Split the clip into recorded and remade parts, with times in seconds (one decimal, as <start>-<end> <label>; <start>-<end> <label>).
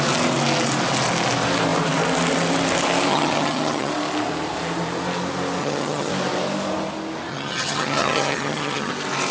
0.0-3.1 recorded; 3.1-3.9 remade; 3.9-5.6 recorded; 5.6-6.1 remade; 6.1-7.3 recorded; 7.3-8.9 remade; 8.9-9.3 recorded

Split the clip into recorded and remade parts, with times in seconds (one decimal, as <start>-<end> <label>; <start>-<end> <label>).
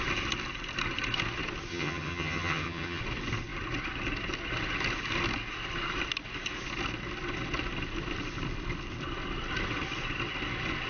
0.0-1.7 recorded; 1.7-3.0 remade; 3.0-10.9 recorded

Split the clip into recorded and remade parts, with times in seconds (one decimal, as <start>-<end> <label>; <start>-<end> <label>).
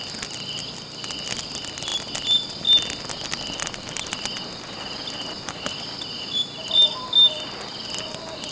0.0-8.5 recorded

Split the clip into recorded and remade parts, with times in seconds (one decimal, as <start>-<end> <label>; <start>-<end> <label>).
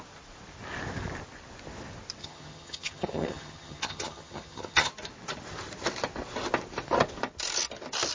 0.0-2.2 recorded; 2.2-4.9 remade; 4.9-8.1 recorded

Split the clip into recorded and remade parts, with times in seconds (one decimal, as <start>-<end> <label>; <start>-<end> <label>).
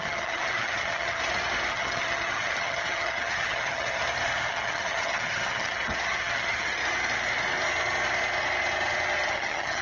0.0-1.2 remade; 1.2-1.7 recorded; 1.7-4.0 remade; 4.0-4.5 recorded; 4.5-6.8 remade; 6.8-9.3 recorded; 9.3-9.8 remade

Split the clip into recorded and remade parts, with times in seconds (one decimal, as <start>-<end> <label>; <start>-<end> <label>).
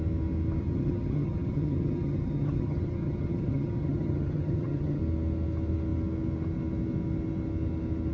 0.0-0.6 recorded; 0.6-5.0 remade; 5.0-8.1 recorded